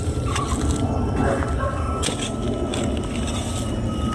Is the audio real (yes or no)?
yes